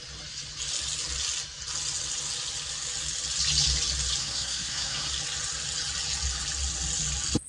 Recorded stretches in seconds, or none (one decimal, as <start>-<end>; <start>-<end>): 0.0-4.2; 5.1-7.5